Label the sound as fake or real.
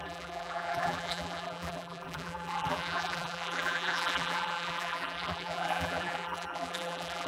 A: fake